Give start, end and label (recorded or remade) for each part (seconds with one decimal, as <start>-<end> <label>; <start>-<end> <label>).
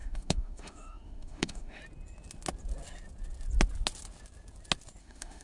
0.0-1.8 remade; 1.8-5.0 recorded; 5.0-5.4 remade